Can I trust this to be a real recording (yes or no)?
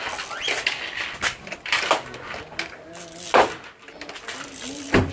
yes